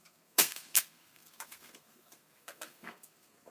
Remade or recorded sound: remade